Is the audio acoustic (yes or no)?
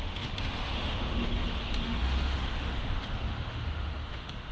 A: no